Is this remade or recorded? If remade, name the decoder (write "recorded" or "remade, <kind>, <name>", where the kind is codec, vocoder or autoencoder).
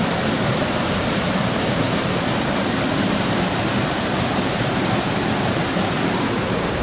remade, vocoder, BigVGAN v2